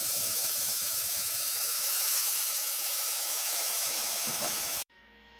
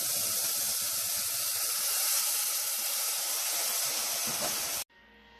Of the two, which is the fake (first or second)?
first